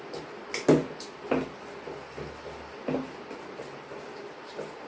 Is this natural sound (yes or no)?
yes